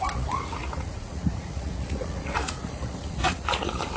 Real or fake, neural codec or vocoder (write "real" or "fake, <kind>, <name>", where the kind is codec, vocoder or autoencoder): fake, vocoder, Vocos